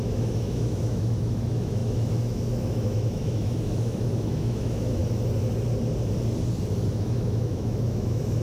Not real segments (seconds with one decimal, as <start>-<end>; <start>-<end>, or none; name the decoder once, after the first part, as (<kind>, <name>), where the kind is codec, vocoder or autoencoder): 0.0-5.0 (autoencoder, DAC-VAE); 6.9-8.4